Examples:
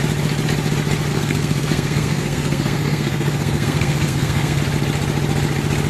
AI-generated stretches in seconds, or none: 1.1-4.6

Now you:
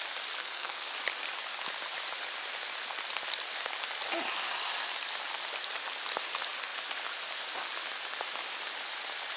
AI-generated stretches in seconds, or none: 0.4-0.9

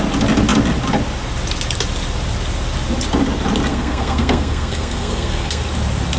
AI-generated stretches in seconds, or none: 3.7-5.6

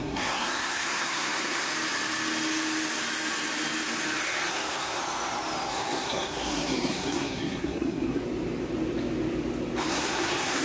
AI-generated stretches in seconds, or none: 0.0-1.7; 4.5-5.0; 5.7-8.2; 9.9-10.6

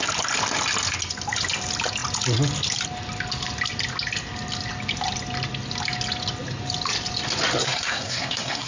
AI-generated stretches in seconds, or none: 7.6-8.7

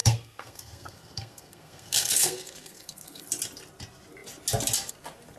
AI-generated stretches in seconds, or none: 0.0-3.2

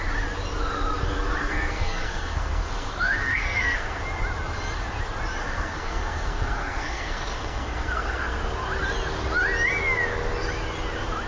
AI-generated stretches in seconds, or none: 1.4-4.0; 5.4-8.4